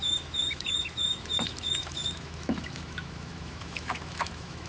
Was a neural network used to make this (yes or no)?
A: yes